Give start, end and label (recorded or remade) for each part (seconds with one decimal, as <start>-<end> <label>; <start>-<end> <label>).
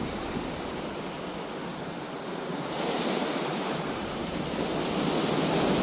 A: 0.0-0.8 remade; 0.8-1.7 recorded; 1.7-4.4 remade; 4.4-5.8 recorded